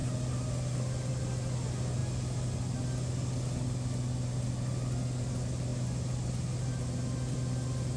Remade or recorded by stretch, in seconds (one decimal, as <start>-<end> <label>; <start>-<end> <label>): 0.0-8.0 recorded